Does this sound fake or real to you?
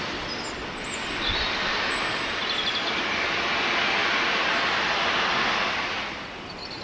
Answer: real